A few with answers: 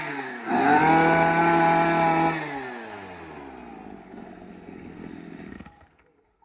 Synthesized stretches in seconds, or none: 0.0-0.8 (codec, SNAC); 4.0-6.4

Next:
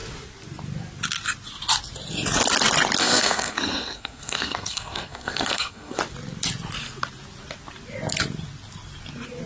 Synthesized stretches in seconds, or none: 3.0-6.0 (codec, SNAC)

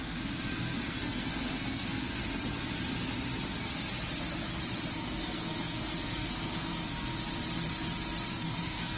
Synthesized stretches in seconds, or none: 0.0-2.2 (codec, SNAC); 4.9-7.1; 8.3-9.0

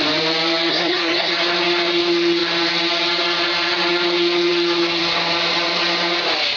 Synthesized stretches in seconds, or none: 0.7-1.3 (codec, SNAC)

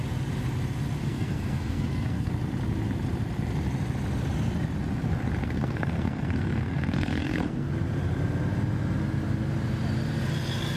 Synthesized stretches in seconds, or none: 1.0-2.3 (codec, SNAC); 5.4-7.7

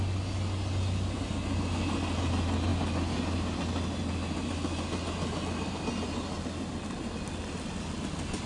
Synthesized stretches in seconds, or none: none

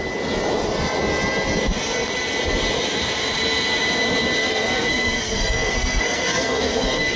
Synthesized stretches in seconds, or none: 4.4-7.2 (codec, SNAC)